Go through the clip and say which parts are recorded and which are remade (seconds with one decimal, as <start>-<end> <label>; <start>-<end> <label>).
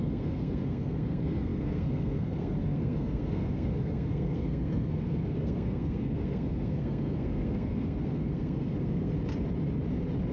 0.0-9.1 remade; 9.1-10.3 recorded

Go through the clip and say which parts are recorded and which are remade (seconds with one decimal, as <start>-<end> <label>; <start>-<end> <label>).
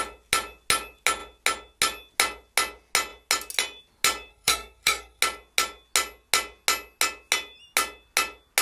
0.0-4.3 recorded; 4.3-5.2 remade; 5.2-8.6 recorded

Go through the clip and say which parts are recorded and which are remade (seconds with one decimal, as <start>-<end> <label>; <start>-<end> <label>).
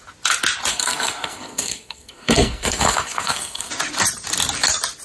0.0-0.7 recorded; 0.7-3.7 remade; 3.7-5.0 recorded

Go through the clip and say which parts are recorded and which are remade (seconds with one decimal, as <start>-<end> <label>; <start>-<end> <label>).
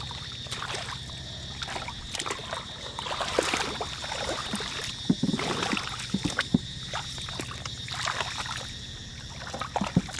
0.0-10.2 recorded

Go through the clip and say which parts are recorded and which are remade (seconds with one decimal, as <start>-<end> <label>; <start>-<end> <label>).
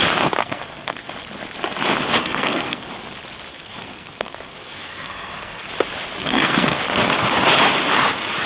0.0-0.4 recorded; 0.4-1.1 remade; 1.1-2.2 recorded; 2.2-2.9 remade; 2.9-3.5 recorded; 3.5-5.7 remade; 5.7-6.2 recorded; 6.2-6.8 remade; 6.8-8.5 recorded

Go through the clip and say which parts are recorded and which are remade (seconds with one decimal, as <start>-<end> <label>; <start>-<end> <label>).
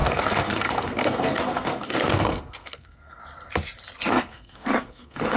0.0-3.2 remade; 3.2-4.1 recorded; 4.1-5.4 remade